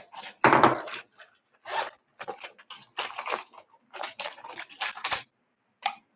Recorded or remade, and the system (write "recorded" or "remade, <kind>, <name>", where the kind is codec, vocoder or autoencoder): remade, vocoder, BigVGAN v2